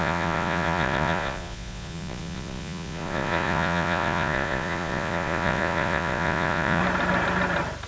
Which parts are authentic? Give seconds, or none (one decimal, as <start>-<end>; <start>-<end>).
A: 6.8-7.9